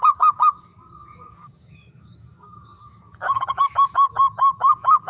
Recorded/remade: remade